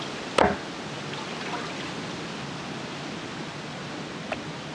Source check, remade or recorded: recorded